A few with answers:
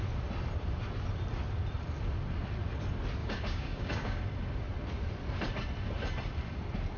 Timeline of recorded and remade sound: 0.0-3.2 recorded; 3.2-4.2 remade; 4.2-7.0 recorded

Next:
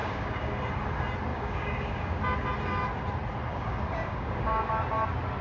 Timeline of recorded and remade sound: 0.0-0.6 remade; 0.6-1.3 recorded; 1.3-2.2 remade; 2.2-3.5 recorded; 3.5-4.7 remade; 4.7-5.4 recorded

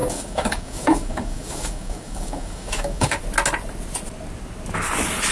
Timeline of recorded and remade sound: 0.0-3.2 remade; 3.2-5.3 recorded

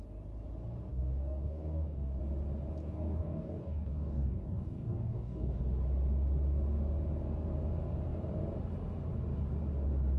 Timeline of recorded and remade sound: 0.0-0.9 recorded; 0.9-2.2 remade; 2.2-2.8 recorded; 2.8-5.6 remade; 5.6-10.2 recorded

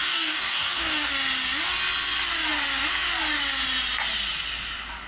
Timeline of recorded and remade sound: 0.0-1.1 remade; 1.1-5.1 recorded

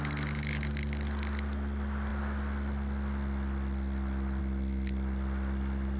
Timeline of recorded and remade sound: 0.0-6.0 recorded

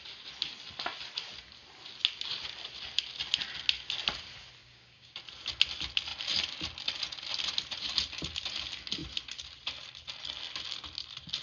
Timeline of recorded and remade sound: 0.0-4.6 recorded; 4.6-5.2 remade; 5.2-11.4 recorded